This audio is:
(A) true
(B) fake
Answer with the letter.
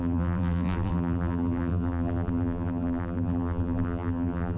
B